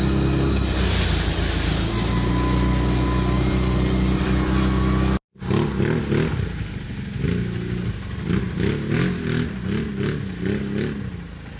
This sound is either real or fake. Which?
real